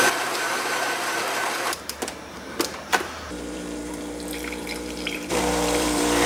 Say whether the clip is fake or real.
fake